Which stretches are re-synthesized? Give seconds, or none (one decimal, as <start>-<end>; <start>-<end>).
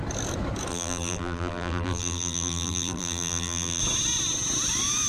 0.7-3.8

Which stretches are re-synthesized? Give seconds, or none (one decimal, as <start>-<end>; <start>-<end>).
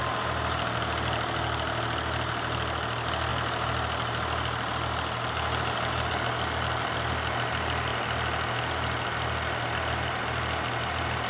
none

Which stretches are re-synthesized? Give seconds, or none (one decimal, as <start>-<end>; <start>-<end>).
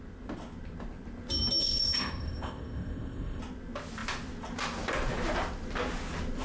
1.6-3.4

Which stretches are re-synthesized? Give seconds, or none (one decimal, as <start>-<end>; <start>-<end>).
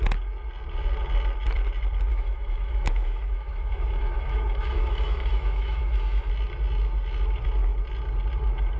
2.1-6.3